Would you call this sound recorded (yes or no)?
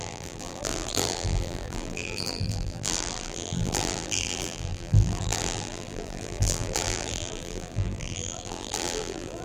no